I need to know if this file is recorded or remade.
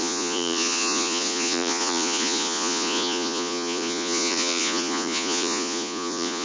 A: remade